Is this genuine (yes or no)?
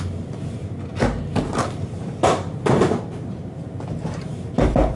yes